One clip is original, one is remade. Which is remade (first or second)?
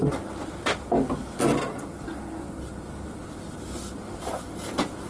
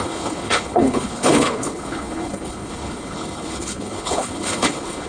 second